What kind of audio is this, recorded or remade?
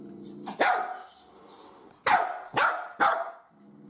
recorded